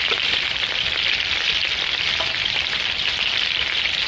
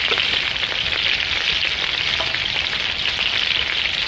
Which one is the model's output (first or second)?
first